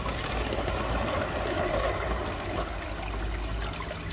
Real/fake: real